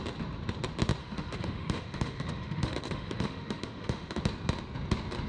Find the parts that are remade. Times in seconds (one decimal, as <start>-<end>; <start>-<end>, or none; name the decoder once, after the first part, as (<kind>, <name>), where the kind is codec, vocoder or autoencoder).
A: 1.0-4.2 (autoencoder, DAC-VAE)